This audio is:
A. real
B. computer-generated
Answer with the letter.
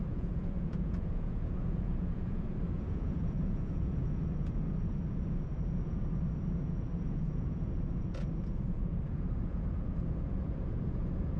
B